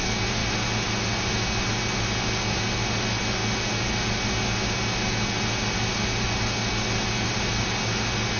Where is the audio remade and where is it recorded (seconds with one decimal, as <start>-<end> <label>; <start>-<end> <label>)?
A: 0.0-8.4 recorded